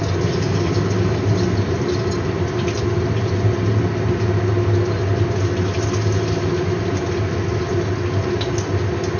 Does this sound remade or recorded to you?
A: recorded